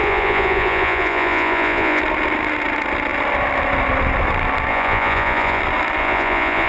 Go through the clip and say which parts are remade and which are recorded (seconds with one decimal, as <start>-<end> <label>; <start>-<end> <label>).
0.0-2.0 remade; 2.0-4.7 recorded; 4.7-5.6 remade; 5.6-6.0 recorded; 6.0-6.7 remade